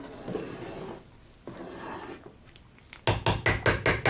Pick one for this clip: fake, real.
real